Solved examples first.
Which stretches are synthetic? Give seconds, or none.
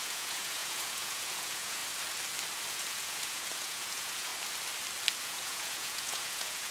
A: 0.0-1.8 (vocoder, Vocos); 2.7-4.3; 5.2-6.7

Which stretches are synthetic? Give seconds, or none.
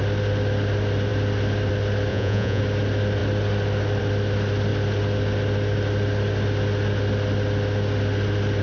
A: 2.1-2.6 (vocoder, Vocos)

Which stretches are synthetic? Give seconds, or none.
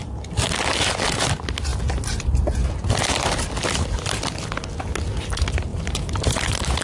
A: 5.7-6.8 (vocoder, BigVGAN v2)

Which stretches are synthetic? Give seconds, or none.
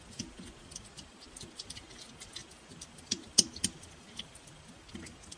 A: none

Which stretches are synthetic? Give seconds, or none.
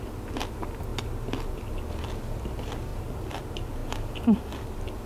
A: none